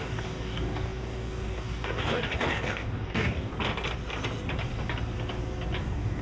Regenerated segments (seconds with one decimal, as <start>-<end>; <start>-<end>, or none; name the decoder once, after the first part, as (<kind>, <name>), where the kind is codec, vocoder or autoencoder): 0.0-3.5 (codec, DAC); 5.8-6.2